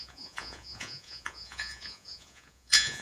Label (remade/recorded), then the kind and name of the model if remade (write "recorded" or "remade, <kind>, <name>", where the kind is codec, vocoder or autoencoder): remade, vocoder, Vocos